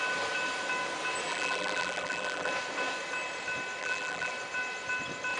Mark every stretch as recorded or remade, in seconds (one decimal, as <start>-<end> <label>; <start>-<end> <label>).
0.0-1.3 recorded; 1.3-2.5 remade; 2.5-3.8 recorded; 3.8-4.3 remade; 4.3-5.4 recorded